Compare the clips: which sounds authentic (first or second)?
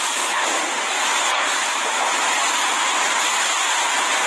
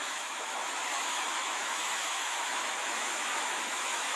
first